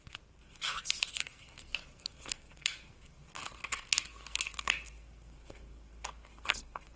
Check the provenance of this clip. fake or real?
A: fake